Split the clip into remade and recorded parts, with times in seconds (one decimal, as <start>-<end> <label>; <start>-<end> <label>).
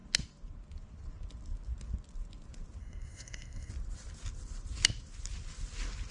0.0-2.8 recorded; 2.8-3.7 remade; 3.7-6.1 recorded